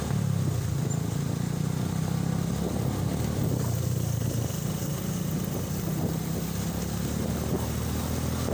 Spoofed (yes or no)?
no